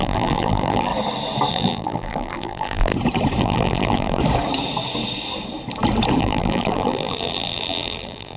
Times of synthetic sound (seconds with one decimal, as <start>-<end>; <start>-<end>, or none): 0.0-0.9; 1.5-2.9; 3.4-4.2; 6.2-8.4